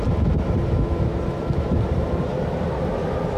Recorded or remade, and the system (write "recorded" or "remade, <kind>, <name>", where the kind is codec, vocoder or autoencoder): recorded